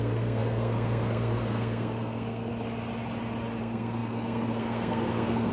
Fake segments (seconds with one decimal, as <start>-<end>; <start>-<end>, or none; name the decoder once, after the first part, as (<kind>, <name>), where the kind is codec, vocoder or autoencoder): 0.0-2.5 (codec, SNAC); 3.6-5.5